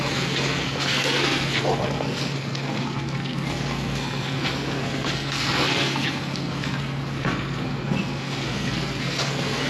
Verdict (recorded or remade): remade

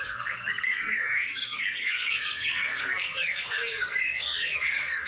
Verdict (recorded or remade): remade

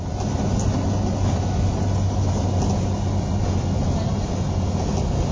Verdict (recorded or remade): recorded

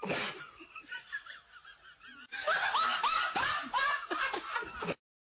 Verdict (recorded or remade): recorded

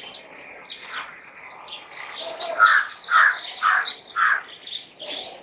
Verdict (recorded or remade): recorded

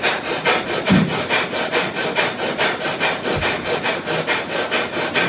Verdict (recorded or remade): recorded